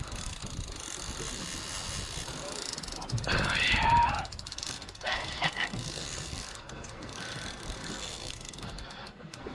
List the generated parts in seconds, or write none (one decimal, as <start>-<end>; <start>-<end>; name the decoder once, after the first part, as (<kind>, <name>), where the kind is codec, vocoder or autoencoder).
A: 0.0-0.4 (codec, SNAC); 4.5-9.5